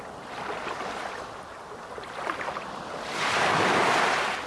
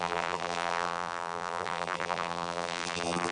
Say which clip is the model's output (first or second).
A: second